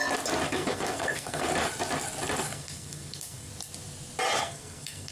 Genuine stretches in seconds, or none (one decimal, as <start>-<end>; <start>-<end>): 0.0-0.5; 1.5-2.4; 3.5-4.4